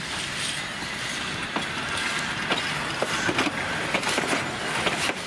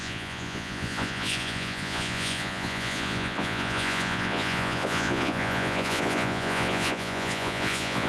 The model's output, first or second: second